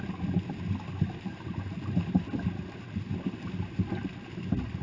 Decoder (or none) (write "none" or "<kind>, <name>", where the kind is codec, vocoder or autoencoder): none